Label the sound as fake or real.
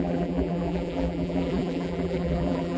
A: fake